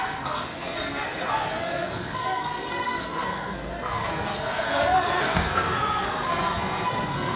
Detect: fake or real fake